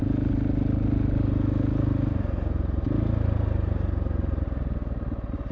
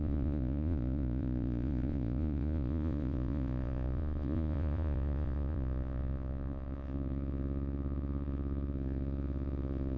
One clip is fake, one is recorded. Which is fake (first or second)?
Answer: second